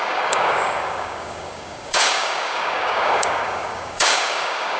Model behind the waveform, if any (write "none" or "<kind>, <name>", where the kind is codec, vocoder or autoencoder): codec, DAC